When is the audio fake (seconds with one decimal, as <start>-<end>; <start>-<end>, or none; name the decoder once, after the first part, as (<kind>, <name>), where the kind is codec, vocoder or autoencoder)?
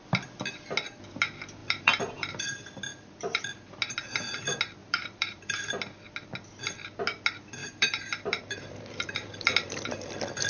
1.6-2.3 (vocoder, BigVGAN v2); 2.9-3.8; 4.8-5.7; 7.6-10.1